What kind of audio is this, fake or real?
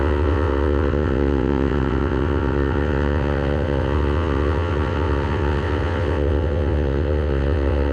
fake